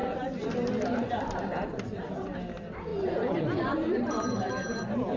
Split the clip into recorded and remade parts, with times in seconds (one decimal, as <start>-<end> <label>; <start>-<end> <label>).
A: 0.0-2.9 recorded; 2.9-4.5 remade; 4.5-5.2 recorded